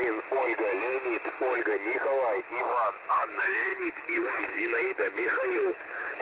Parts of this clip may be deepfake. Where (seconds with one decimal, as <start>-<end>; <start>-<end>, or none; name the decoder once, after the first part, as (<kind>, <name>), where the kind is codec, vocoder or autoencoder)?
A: 3.1-6.2 (codec, HILCodec)